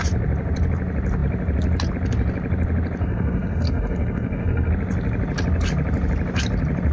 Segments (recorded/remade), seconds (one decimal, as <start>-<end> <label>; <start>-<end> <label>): 0.0-3.0 recorded; 3.0-4.7 remade; 4.7-6.9 recorded